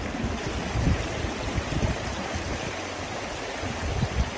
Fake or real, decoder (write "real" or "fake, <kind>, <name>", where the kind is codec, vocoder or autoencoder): real